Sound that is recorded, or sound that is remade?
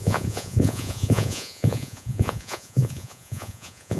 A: remade